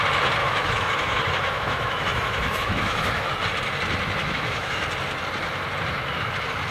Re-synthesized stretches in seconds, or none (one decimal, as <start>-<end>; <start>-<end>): 0.4-3.3; 4.2-4.8